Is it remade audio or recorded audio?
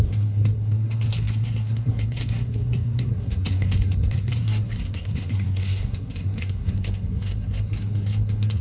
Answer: remade